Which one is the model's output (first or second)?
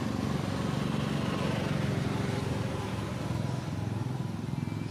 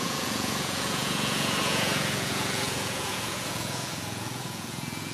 second